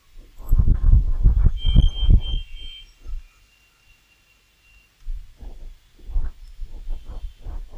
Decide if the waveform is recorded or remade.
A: recorded